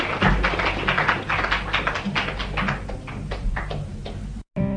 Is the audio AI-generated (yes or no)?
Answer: no